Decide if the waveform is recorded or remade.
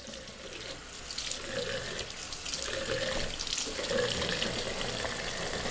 recorded